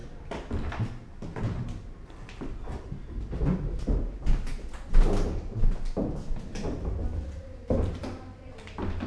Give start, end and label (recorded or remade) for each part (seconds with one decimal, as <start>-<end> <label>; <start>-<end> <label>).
0.0-9.1 recorded